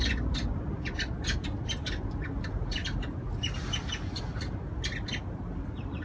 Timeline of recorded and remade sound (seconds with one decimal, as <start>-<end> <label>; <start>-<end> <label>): 0.0-6.0 recorded